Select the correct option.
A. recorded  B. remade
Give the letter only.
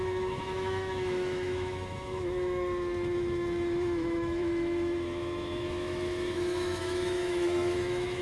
B